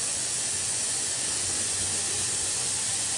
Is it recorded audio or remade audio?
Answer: remade